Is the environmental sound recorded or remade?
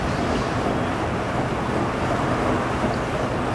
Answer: recorded